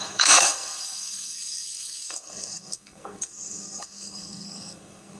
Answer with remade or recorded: remade